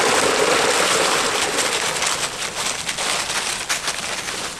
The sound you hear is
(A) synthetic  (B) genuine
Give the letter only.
B